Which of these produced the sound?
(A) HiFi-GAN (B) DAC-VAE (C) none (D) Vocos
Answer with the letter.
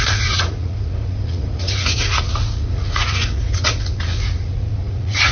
D